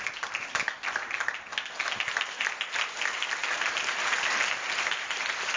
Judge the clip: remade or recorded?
recorded